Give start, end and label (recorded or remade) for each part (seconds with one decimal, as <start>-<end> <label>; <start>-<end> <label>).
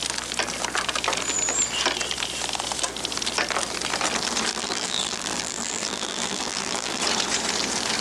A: 0.0-4.5 recorded; 4.5-7.0 remade; 7.0-8.0 recorded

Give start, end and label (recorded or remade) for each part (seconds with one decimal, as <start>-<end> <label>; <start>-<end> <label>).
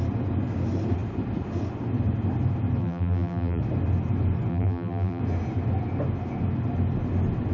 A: 0.0-2.8 recorded; 2.8-3.6 remade; 3.6-4.5 recorded; 4.5-5.2 remade; 5.2-7.5 recorded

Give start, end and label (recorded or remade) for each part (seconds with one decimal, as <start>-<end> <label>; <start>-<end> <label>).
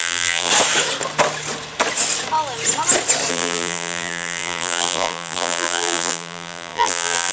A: 0.0-0.5 remade; 0.5-3.3 recorded; 3.3-7.3 remade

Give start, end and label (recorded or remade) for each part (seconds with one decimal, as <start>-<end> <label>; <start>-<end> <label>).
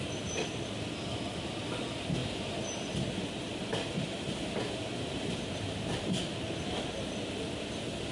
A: 0.0-2.2 recorded; 2.2-3.2 remade; 3.2-3.6 recorded; 3.6-6.2 remade; 6.2-8.1 recorded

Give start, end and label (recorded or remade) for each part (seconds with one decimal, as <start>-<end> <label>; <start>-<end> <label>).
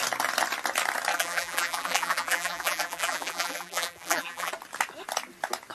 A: 0.0-1.1 recorded; 1.1-4.5 remade; 4.5-5.7 recorded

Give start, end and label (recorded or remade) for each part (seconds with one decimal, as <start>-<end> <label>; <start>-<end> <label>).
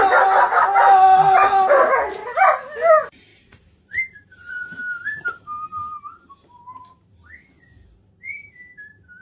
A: 0.0-3.3 recorded; 3.3-4.5 remade; 4.5-9.2 recorded